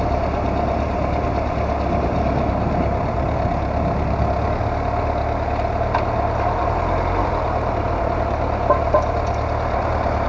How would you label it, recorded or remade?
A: recorded